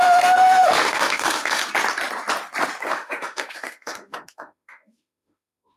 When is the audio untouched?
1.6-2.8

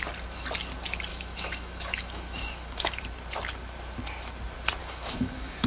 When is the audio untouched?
0.0-1.1; 3.0-4.8

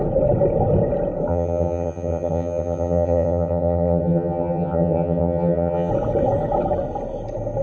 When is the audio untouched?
0.0-1.3; 5.9-7.6

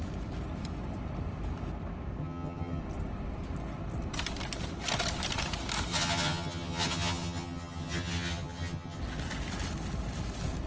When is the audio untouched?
0.0-2.2; 2.8-5.9; 9.0-10.7

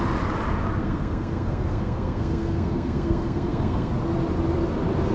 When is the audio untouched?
0.0-0.8; 3.9-5.1

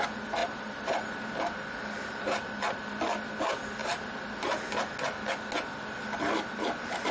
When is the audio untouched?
0.0-0.4; 3.0-7.1